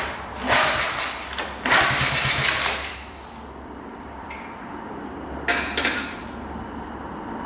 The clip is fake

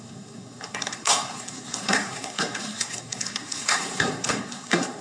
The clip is fake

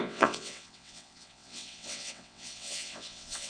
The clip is fake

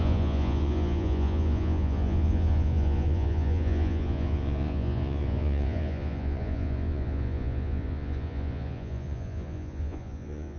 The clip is fake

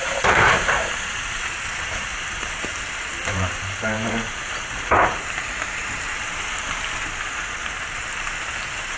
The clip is fake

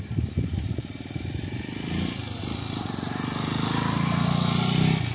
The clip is real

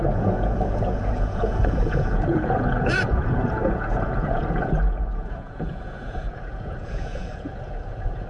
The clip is fake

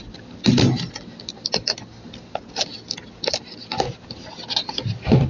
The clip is real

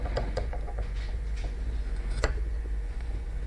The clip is fake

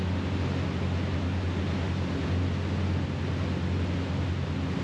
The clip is real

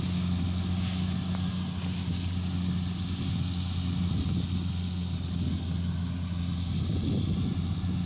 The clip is real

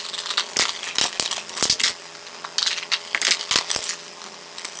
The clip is real